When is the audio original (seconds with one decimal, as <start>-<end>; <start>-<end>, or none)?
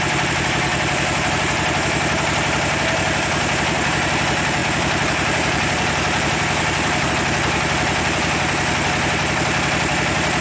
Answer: 0.0-0.7; 1.3-4.6; 7.1-10.4